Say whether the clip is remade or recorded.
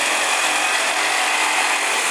recorded